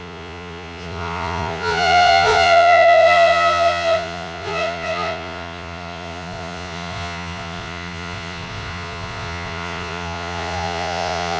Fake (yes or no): yes